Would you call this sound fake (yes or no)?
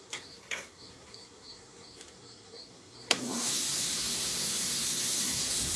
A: yes